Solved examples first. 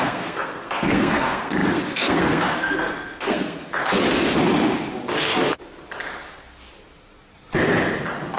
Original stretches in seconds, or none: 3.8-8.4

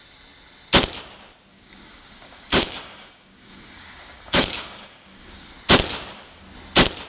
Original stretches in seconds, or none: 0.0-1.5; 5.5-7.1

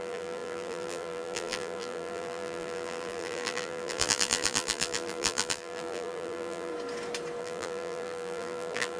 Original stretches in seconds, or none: 6.7-7.4

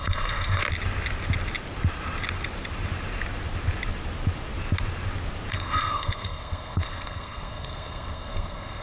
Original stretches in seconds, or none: 0.6-5.5

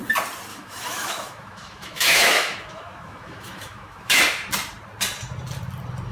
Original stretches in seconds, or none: 0.0-0.5; 4.2-6.1